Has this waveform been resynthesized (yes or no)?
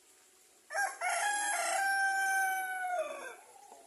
no